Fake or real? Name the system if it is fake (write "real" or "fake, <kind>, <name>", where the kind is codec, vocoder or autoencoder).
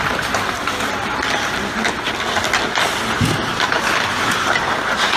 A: real